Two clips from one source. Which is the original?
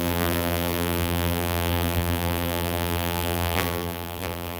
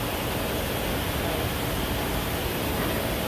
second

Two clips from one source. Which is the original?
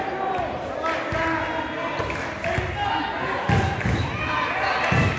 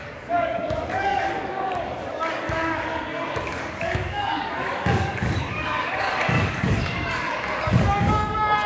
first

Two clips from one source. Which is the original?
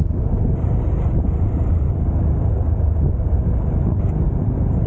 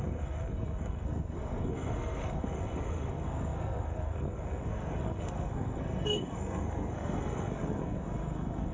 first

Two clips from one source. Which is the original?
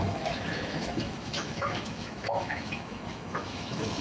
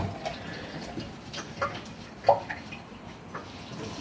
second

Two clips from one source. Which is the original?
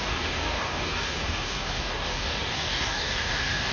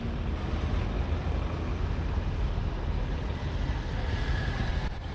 second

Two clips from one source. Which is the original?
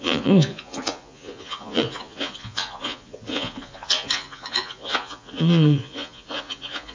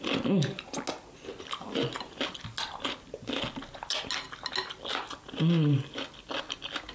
second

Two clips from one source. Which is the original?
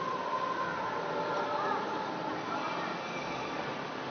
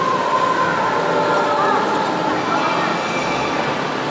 second